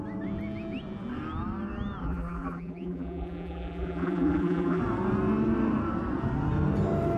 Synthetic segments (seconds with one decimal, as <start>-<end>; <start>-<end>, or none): 2.0-4.8

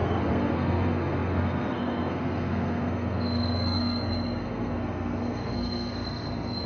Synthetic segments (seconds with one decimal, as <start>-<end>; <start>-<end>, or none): 0.0-6.7